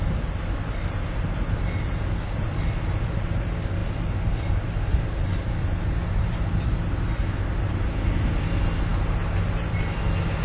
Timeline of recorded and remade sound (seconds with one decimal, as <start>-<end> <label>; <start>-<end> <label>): 0.0-10.4 recorded